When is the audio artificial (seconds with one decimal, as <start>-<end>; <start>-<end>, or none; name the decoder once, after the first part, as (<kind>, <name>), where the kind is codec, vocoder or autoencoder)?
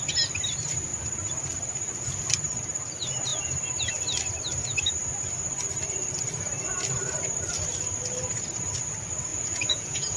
9.3-10.2 (vocoder, Vocos)